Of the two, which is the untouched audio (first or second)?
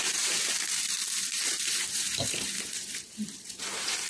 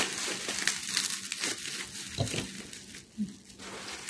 second